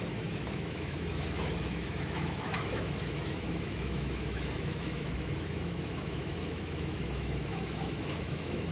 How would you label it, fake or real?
fake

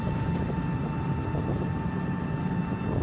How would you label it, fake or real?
real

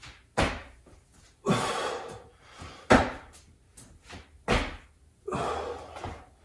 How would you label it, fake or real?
real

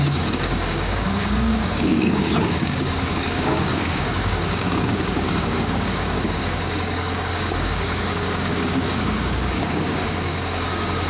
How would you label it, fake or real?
fake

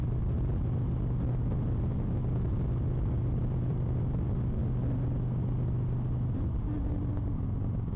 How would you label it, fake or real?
real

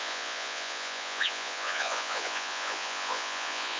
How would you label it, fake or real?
fake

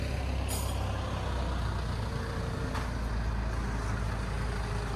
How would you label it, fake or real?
real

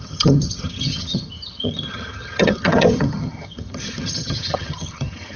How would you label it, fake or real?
fake